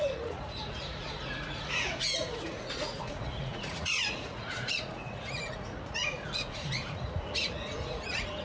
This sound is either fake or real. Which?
fake